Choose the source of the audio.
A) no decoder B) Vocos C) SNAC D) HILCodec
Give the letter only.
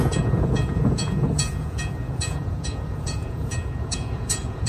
B